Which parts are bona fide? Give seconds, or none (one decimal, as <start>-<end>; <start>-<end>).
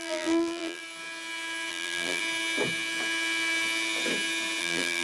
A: 0.8-1.7; 2.2-4.6